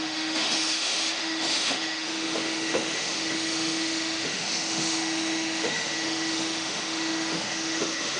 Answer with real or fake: fake